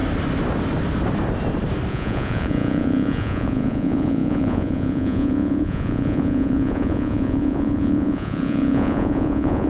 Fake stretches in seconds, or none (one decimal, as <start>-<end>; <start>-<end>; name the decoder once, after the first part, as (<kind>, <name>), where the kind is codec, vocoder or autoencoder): 1.9-9.7 (vocoder, Vocos)